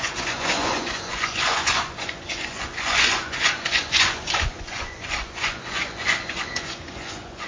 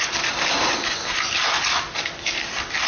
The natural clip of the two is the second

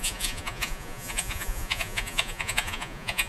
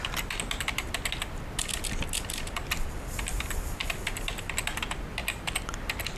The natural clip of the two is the second